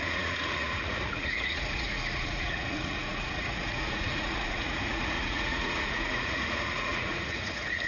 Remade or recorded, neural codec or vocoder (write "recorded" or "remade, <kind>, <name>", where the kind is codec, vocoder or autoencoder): remade, vocoder, Vocos